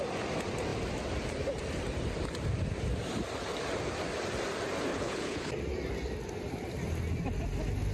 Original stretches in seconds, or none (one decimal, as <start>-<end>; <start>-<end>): 0.0-4.9; 5.5-7.9